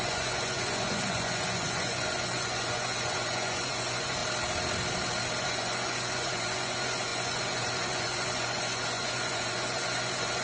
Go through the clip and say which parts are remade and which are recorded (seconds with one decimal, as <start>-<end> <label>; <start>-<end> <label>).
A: 0.0-4.2 remade; 4.2-5.4 recorded; 5.4-10.4 remade